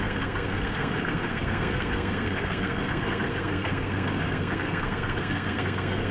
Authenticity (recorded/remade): remade